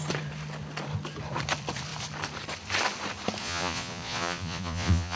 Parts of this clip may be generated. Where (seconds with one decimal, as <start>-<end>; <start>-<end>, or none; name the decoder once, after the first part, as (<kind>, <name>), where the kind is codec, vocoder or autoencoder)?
3.4-5.2 (vocoder, Vocos)